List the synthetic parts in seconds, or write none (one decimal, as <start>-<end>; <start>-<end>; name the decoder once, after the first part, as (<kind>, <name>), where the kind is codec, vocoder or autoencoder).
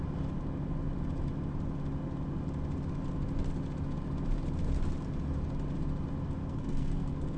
6.4-7.4 (codec, SNAC)